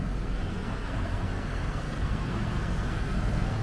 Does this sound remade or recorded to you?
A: remade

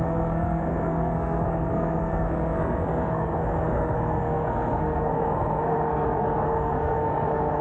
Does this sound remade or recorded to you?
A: remade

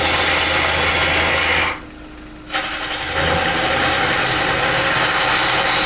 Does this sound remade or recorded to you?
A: recorded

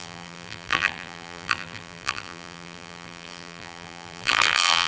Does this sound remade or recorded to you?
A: remade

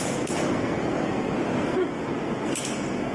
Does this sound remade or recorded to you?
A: remade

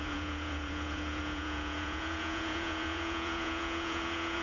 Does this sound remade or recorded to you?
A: remade